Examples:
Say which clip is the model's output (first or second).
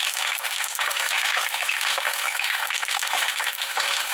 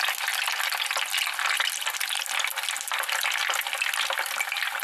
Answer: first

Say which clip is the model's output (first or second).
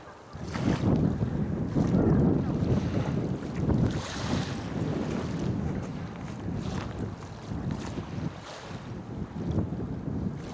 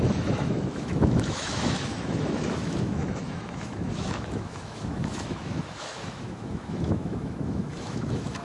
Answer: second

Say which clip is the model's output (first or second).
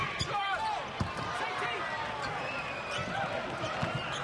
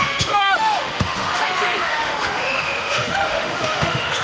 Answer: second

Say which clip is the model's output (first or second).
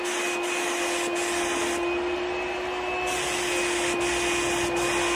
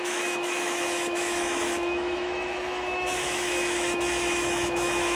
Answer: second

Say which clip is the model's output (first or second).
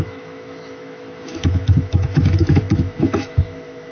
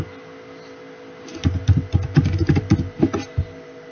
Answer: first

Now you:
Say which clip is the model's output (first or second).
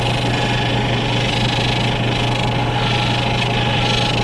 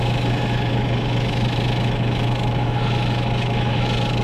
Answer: second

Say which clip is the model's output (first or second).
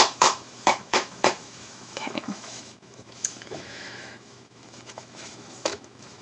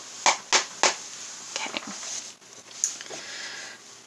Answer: first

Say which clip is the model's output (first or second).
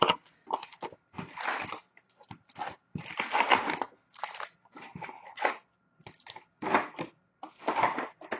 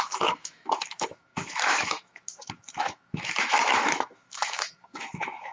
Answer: second